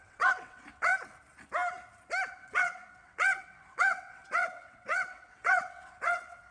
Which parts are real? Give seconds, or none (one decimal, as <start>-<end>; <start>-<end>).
0.9-2.3